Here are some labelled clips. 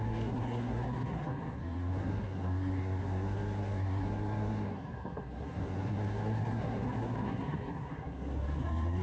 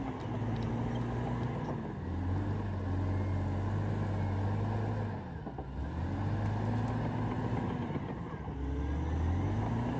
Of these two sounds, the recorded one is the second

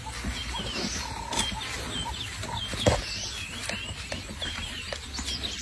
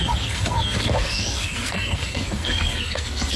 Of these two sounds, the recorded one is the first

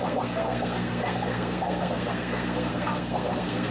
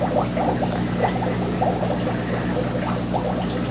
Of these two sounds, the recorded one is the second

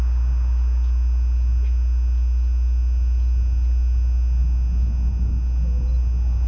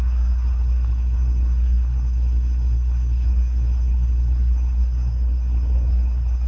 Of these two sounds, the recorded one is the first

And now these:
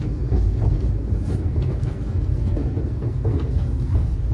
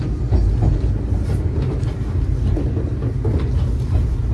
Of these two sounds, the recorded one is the second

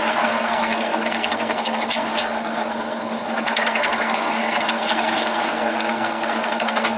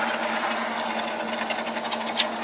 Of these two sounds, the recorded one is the second